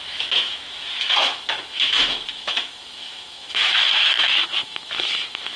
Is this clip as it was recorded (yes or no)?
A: no